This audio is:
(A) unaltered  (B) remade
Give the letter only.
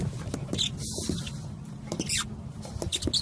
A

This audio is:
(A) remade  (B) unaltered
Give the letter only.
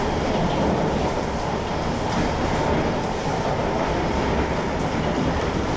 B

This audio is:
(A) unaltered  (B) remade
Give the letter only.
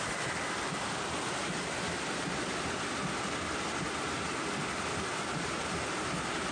A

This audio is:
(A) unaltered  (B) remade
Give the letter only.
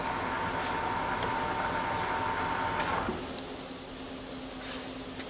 A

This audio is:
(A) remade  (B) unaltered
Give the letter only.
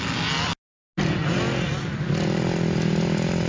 B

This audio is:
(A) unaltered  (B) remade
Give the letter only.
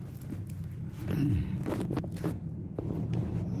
A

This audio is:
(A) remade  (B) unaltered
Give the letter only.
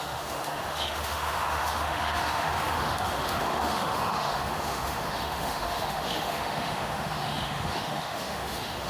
A